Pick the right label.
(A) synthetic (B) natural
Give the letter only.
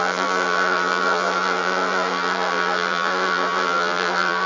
A